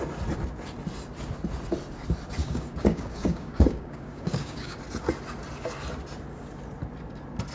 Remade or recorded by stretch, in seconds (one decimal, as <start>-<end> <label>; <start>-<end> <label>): 0.0-2.4 recorded; 2.4-4.8 remade; 4.8-7.5 recorded